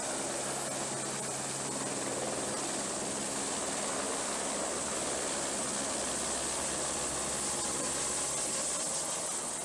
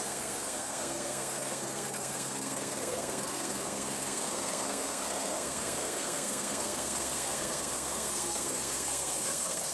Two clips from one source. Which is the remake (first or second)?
second